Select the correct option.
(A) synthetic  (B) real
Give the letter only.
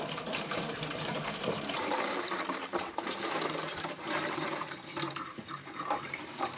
A